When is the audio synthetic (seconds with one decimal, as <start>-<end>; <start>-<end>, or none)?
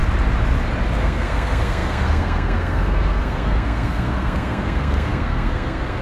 1.0-6.0